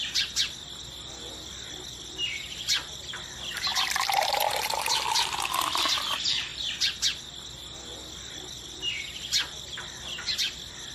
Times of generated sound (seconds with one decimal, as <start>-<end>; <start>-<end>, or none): 0.0-6.5; 8.3-10.9